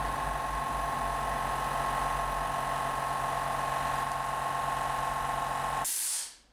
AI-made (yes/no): no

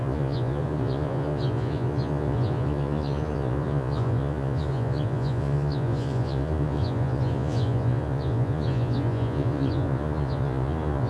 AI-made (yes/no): yes